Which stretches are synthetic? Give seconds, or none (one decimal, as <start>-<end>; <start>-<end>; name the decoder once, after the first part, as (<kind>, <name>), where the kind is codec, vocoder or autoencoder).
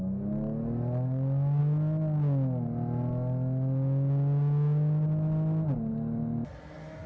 none